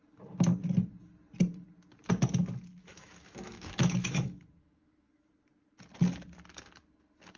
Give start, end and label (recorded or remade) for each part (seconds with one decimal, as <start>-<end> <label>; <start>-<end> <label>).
0.0-2.8 recorded; 2.8-5.3 remade; 5.3-7.4 recorded

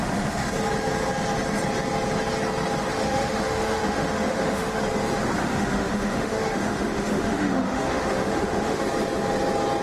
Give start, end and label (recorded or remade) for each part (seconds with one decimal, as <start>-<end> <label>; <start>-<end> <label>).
0.0-2.9 recorded; 2.9-4.8 remade; 4.8-5.4 recorded; 5.4-8.8 remade; 8.8-9.8 recorded

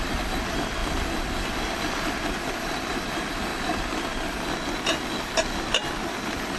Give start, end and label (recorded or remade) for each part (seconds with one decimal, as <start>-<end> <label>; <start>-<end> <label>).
0.0-6.6 recorded

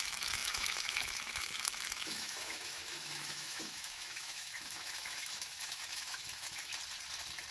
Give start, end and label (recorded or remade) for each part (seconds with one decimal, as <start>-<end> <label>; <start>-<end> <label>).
0.0-6.7 remade; 6.7-7.5 recorded

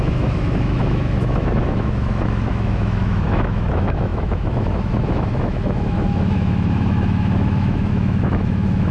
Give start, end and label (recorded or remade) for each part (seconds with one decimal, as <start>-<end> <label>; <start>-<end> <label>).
0.0-8.9 remade

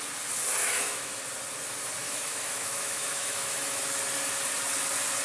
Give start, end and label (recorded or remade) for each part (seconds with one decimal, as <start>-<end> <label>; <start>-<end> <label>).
0.0-0.6 recorded; 0.6-1.2 remade; 1.2-2.0 recorded; 2.0-3.9 remade; 3.9-5.2 recorded